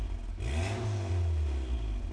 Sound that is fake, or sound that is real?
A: real